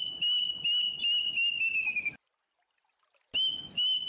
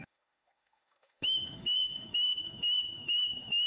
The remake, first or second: second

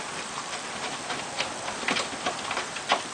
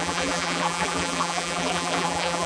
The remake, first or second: second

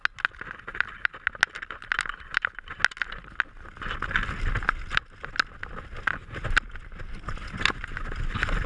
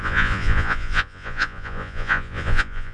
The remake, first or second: second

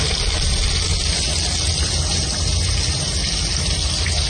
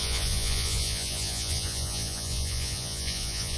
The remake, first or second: second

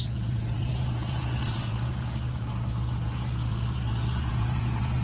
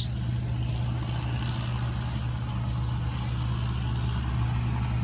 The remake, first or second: first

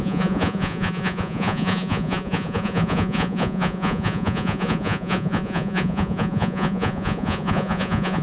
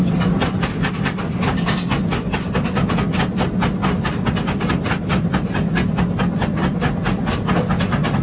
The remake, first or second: first